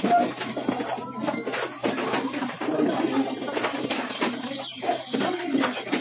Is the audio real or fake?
real